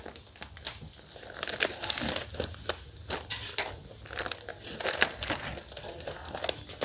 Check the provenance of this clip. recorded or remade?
recorded